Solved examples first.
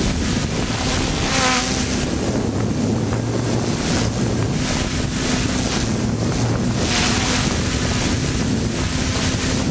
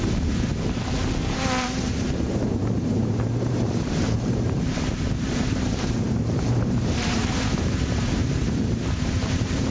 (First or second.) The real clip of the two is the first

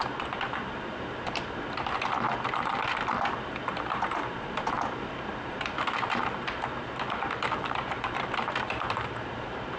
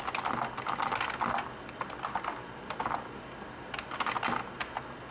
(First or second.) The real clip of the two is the second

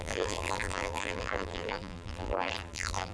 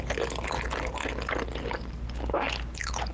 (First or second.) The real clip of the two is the second